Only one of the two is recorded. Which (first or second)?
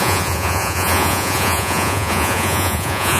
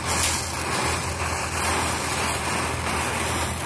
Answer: second